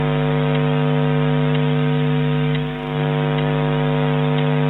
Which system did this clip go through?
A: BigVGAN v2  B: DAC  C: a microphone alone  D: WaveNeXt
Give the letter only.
C